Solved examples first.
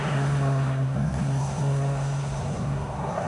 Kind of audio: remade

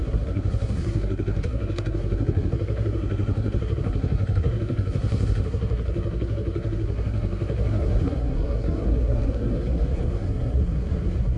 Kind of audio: remade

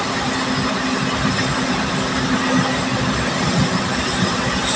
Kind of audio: recorded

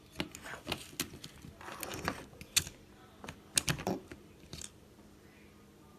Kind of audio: recorded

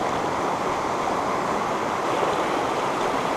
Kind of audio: recorded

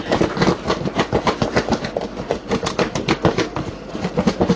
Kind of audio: recorded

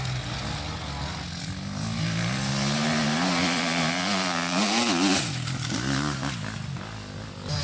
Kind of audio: recorded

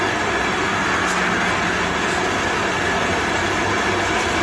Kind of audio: recorded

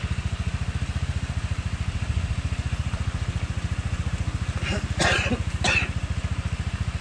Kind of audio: recorded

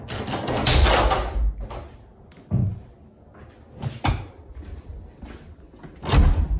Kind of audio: recorded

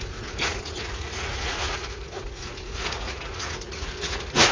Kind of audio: remade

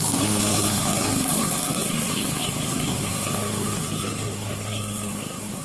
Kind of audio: remade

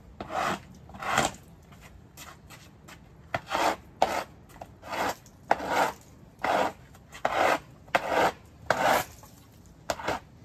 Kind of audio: recorded